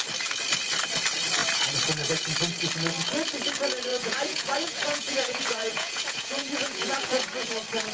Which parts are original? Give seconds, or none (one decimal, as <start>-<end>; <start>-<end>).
0.0-3.9; 7.5-7.9